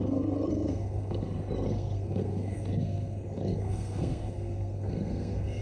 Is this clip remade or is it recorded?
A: remade